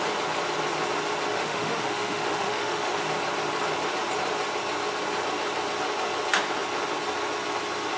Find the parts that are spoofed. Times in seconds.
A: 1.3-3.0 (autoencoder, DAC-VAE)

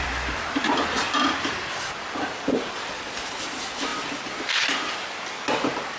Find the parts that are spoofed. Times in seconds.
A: none

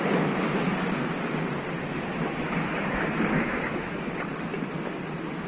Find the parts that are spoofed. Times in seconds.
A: 1.9-4.1 (autoencoder, DAC-VAE)

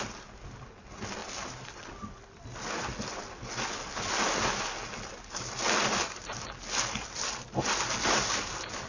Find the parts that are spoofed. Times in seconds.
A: none

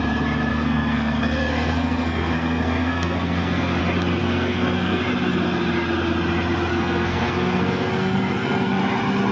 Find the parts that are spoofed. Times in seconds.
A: 0.5-3.8 (codec, SNAC); 4.2-5.0; 6.7-8.8

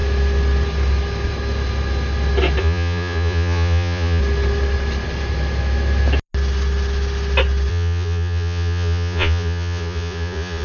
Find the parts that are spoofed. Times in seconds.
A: 2.6-4.2 (vocoder, Vocos); 7.7-10.6